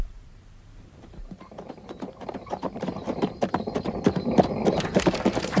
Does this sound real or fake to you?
fake